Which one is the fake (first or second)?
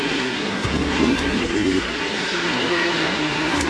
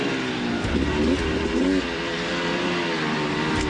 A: first